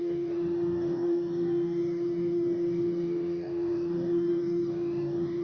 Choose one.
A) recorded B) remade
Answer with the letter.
B